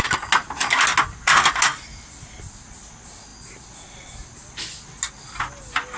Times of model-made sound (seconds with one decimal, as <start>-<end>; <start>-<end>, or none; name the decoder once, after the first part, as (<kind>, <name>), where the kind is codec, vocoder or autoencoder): none